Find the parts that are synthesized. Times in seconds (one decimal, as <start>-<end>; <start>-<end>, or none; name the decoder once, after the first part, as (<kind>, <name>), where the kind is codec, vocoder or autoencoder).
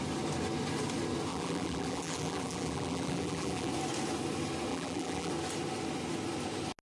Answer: 1.3-3.7 (vocoder, BigVGAN v2); 4.7-5.3